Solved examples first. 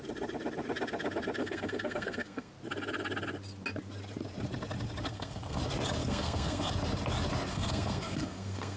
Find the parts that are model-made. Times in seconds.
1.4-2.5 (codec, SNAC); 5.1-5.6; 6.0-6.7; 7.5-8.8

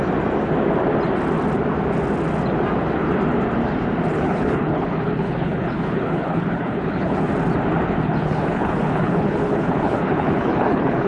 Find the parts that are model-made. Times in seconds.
4.1-7.3 (codec, HILCodec); 8.0-11.1

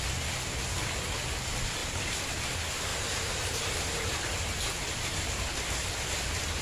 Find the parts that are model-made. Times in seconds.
2.9-3.6 (vocoder, BigVGAN v2)

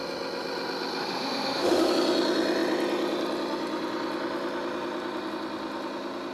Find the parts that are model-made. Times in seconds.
1.0-1.9 (autoencoder, DAC-VAE)

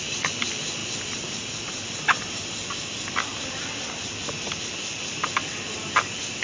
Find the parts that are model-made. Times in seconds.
none

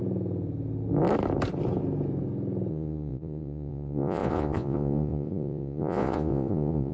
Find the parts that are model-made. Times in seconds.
2.7-6.9 (vocoder, Vocos)

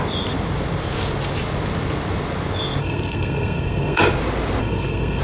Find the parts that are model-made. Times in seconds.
2.8-4.0 (codec, SNAC); 4.6-5.2

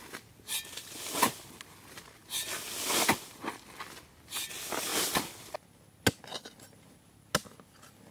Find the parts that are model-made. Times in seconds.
none